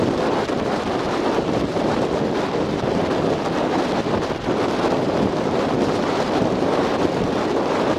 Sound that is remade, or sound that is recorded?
remade